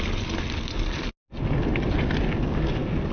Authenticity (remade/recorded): recorded